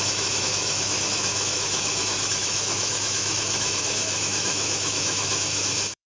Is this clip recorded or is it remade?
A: remade